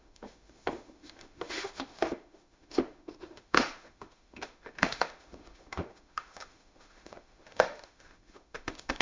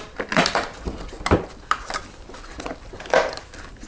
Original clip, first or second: second